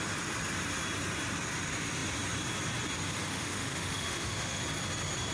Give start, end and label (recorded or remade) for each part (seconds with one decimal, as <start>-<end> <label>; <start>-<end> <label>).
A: 0.0-3.3 recorded; 3.3-4.6 remade; 4.6-5.3 recorded